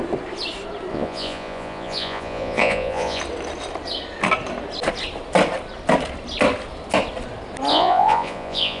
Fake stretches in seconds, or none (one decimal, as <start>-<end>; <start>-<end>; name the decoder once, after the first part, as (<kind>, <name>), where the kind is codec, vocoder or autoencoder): 0.9-3.2 (vocoder, Vocos); 7.7-8.8